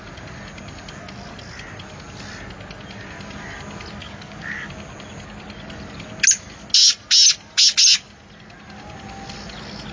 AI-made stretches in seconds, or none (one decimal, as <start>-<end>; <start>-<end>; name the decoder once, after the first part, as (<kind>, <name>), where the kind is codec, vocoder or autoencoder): 4.0-4.7 (codec, DAC)